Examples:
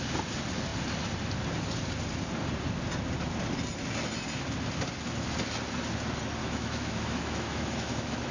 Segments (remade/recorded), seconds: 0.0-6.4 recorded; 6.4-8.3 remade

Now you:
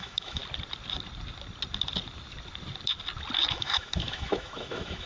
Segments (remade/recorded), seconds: 0.0-0.4 remade; 0.4-3.5 recorded; 3.5-5.1 remade

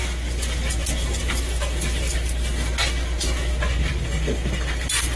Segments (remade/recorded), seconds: 0.0-5.2 recorded

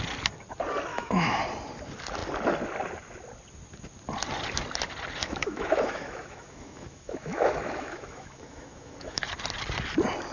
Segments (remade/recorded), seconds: 0.0-0.9 recorded; 0.9-1.4 remade; 1.4-5.2 recorded; 5.2-9.2 remade; 9.2-10.3 recorded

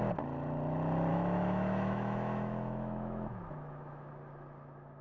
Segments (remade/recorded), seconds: 0.0-1.1 recorded; 1.1-4.1 remade; 4.1-5.0 recorded